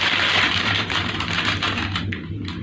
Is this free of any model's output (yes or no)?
no